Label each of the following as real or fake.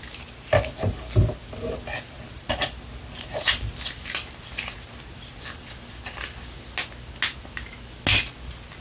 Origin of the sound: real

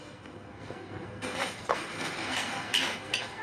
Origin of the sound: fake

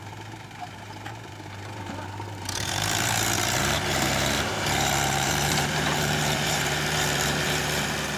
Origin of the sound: fake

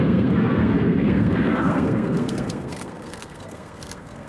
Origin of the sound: fake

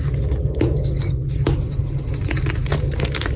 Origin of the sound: real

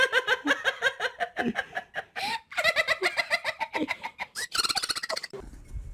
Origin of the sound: fake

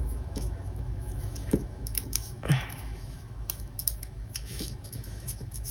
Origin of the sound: fake